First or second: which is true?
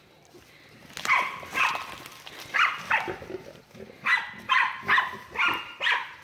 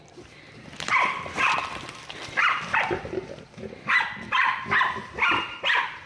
first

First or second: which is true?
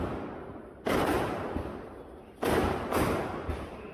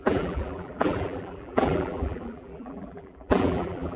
first